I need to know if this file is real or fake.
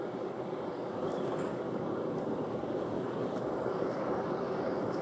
fake